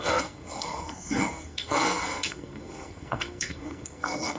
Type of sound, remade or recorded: remade